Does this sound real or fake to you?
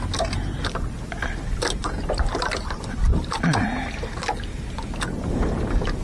real